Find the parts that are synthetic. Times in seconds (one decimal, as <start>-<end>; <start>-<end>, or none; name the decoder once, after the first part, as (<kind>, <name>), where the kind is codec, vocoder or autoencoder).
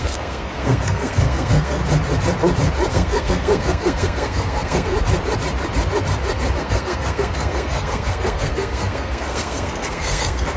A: 0.0-1.8 (codec, SNAC); 2.9-4.9; 6.6-10.6